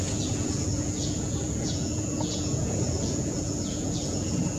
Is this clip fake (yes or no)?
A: yes